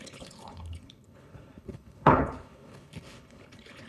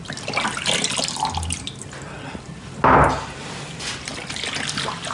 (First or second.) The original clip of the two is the second